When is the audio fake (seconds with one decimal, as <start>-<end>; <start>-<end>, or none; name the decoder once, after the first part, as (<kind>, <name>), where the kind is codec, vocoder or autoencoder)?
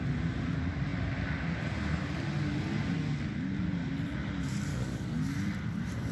4.7-5.3 (codec, DAC)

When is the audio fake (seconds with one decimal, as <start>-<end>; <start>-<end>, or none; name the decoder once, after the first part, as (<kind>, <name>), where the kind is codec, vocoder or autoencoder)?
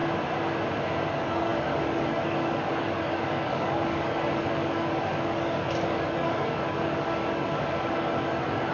1.1-8.7 (codec, DAC)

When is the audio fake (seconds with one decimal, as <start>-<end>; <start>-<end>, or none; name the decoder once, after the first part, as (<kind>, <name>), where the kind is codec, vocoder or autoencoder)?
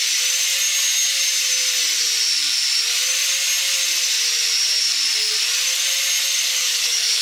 6.5-7.2 (codec, DAC)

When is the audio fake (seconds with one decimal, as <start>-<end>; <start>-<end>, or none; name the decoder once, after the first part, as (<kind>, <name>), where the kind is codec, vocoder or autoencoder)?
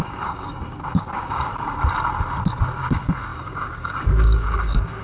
0.0-1.5 (codec, DAC); 2.5-5.0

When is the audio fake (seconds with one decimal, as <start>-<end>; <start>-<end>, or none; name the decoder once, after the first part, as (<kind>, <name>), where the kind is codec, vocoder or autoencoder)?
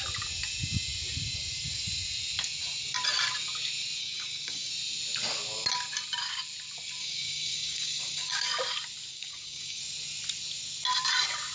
4.0-4.7 (codec, DAC); 7.0-8.3; 9.1-9.8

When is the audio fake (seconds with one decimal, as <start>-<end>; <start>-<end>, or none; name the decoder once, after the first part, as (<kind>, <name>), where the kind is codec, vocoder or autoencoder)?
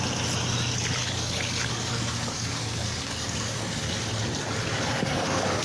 1.0-4.0 (codec, DAC); 4.7-5.6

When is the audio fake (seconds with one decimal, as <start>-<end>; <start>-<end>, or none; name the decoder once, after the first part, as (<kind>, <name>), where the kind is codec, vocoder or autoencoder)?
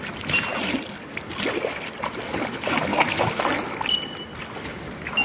2.9-3.4 (codec, DAC)